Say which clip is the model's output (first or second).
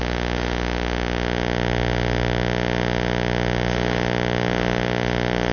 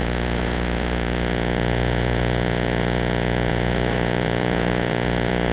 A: second